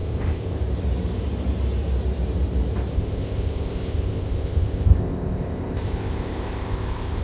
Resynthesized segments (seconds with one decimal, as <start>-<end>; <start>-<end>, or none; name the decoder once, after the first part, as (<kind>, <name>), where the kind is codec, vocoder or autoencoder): 0.0-0.6 (codec, ZipCodec); 2.9-7.2